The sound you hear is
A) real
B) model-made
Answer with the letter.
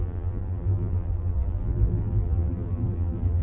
B